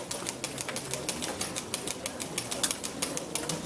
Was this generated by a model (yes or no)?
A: no